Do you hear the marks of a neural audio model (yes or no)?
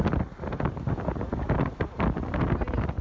no